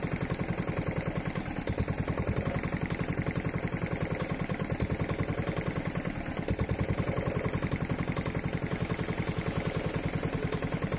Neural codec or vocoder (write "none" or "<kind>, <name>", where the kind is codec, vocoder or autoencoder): none